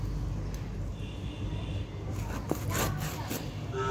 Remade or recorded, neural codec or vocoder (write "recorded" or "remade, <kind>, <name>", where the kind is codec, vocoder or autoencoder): recorded